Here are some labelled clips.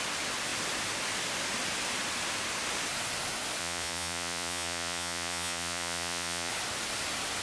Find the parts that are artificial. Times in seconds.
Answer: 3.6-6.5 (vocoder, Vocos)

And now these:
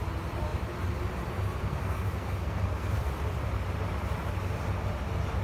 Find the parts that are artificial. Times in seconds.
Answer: 1.6-3.1 (codec, SNAC)

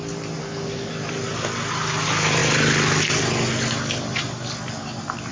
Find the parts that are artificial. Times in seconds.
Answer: 0.4-0.9 (codec, SNAC)

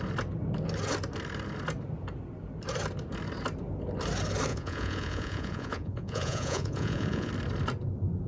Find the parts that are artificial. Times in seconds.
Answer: 4.5-7.3 (vocoder, Vocos)

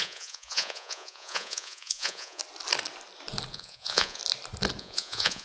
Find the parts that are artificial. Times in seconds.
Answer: 0.0-2.4 (vocoder, Vocos); 3.5-4.2; 4.8-5.4

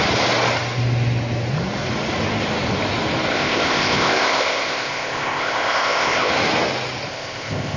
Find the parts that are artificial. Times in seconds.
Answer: 3.3-6.3 (codec, ZipCodec); 7.1-7.8